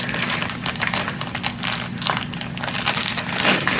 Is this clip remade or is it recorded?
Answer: recorded